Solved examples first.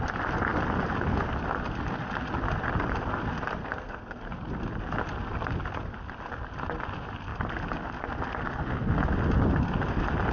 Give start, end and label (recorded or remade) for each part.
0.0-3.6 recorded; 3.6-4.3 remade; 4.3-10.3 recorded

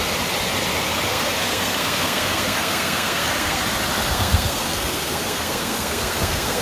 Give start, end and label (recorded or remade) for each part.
0.0-1.1 recorded; 1.1-3.6 remade; 3.6-4.1 recorded; 4.1-6.6 remade

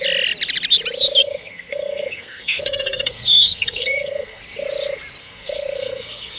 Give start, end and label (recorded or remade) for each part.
0.0-1.2 recorded; 1.2-4.4 remade; 4.4-5.2 recorded; 5.2-6.4 remade

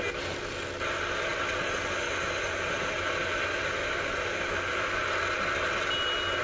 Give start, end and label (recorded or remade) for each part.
0.0-6.4 recorded

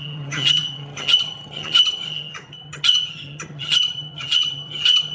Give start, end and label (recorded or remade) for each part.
0.0-5.1 remade

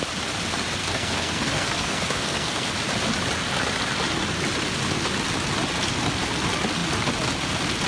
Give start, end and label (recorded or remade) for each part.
0.0-0.8 recorded; 0.8-2.7 remade; 2.7-7.9 recorded

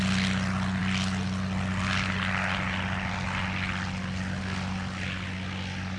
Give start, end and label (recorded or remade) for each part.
0.0-6.0 recorded

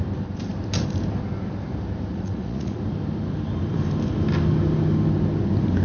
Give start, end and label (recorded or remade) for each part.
0.0-2.1 recorded; 2.1-2.8 remade; 2.8-5.8 recorded